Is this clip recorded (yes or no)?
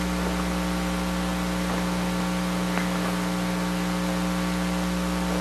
yes